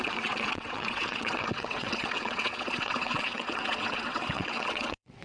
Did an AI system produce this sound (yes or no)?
yes